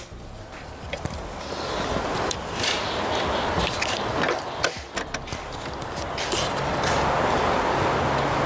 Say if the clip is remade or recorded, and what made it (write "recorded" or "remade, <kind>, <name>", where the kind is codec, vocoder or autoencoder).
recorded